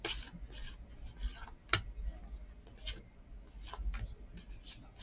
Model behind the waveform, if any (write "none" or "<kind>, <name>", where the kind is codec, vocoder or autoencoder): none